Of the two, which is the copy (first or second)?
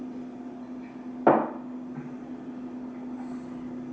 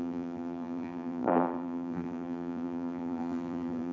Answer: second